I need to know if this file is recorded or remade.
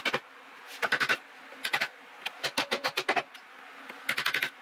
recorded